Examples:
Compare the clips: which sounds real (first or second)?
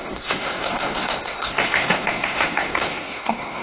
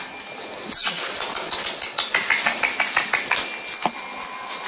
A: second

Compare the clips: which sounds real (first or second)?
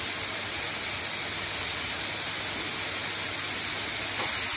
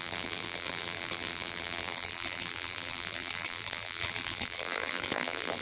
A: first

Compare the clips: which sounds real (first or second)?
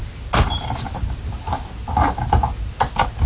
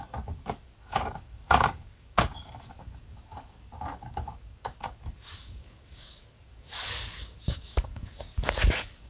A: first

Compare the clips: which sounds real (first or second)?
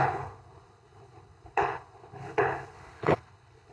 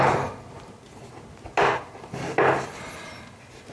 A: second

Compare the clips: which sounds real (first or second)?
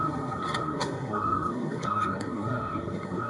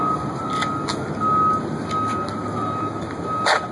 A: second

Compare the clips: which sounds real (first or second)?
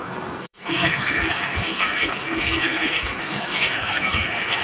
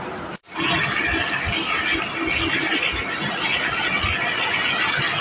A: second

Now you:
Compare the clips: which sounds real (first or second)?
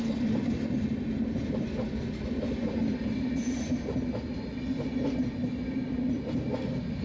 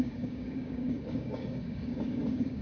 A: first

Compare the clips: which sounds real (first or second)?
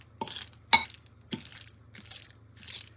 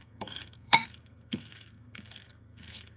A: first